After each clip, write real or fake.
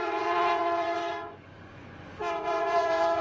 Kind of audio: fake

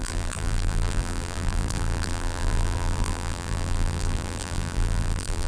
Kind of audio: fake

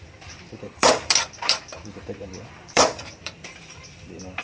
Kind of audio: fake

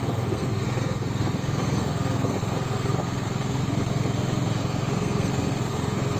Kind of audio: fake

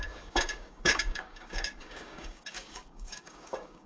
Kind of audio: fake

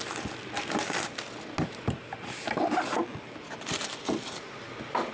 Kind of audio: real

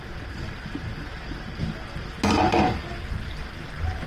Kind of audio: real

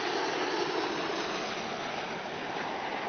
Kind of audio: real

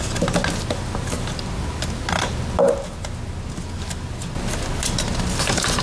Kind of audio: real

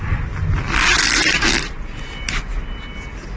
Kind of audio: real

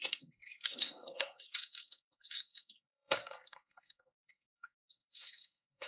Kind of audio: fake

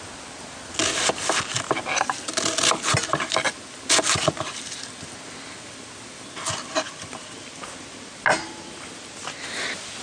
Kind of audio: real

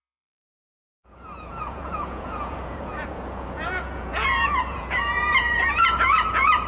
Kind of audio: fake